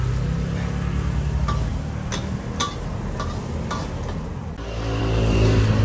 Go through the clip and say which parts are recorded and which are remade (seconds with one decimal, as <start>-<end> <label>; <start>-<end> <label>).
0.0-5.8 recorded